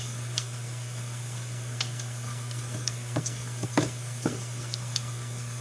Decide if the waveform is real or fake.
fake